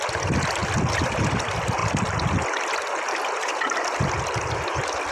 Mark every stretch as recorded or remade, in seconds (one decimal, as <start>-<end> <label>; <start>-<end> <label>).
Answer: 0.0-5.1 recorded